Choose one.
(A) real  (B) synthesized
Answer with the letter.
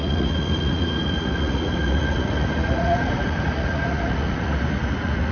B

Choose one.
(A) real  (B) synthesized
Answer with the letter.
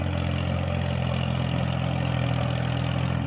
A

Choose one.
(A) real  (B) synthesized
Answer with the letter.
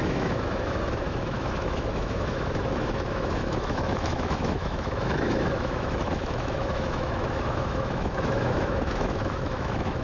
B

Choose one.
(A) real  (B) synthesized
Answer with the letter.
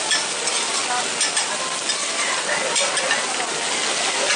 A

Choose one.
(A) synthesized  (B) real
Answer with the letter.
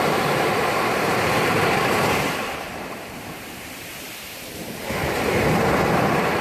A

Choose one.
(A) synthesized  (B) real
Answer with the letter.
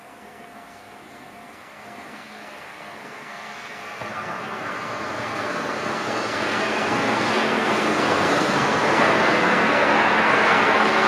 A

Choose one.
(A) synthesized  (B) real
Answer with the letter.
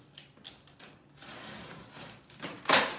B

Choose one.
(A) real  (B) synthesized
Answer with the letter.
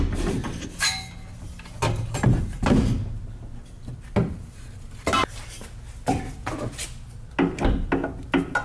A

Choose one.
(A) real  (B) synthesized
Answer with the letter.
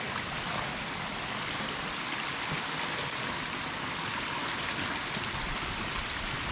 A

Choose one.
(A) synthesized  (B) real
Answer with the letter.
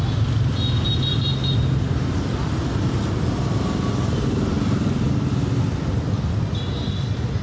B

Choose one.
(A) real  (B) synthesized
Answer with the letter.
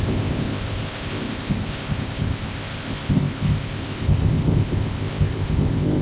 B